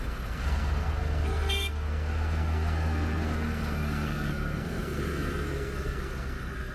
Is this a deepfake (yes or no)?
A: yes